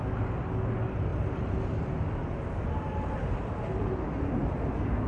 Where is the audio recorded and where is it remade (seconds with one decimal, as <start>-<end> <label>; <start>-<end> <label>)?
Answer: 0.0-1.1 recorded; 1.1-3.9 remade; 3.9-4.4 recorded; 4.4-5.1 remade